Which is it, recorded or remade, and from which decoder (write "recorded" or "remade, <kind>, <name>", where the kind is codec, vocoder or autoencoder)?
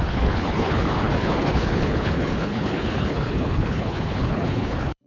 remade, codec, HILCodec